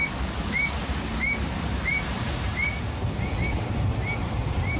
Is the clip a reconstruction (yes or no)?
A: no